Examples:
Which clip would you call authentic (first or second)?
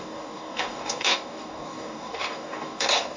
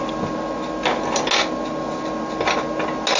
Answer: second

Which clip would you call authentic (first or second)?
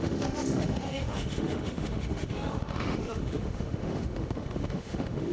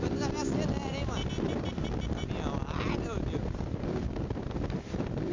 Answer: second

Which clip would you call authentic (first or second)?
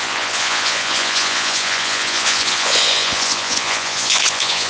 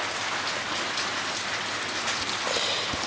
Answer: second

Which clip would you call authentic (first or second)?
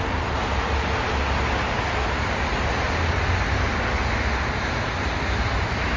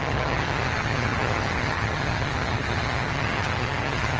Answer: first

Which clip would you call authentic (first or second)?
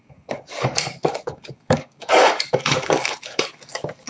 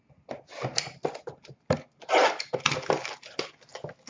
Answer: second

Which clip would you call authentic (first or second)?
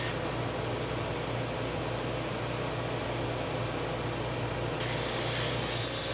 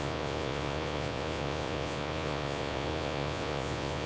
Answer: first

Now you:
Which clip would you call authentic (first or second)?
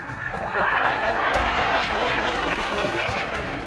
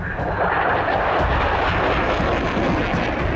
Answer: second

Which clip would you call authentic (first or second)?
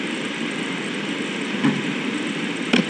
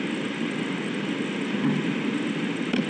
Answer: second